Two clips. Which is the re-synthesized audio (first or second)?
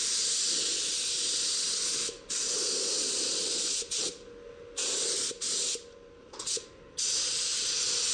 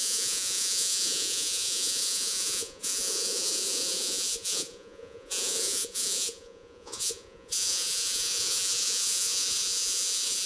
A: second